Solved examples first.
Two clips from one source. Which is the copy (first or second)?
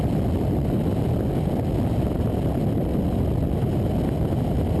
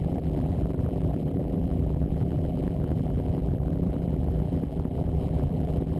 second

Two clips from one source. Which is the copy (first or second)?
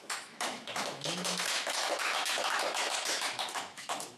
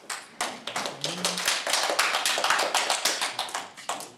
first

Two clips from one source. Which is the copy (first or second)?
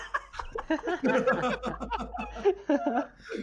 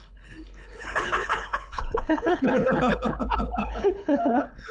second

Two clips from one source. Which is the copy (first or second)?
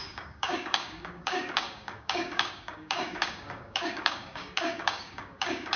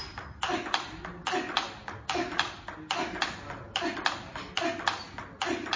first